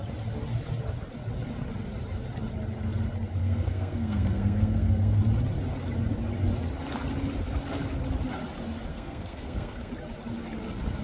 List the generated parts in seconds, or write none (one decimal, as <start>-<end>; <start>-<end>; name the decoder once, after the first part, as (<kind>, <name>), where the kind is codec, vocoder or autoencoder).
3.4-5.2 (codec, SNAC); 8.9-9.9